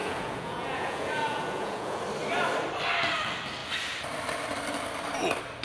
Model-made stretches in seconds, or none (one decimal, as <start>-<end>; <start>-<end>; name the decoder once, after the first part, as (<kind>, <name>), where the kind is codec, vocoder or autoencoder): 0.0-2.0 (vocoder, Vocos)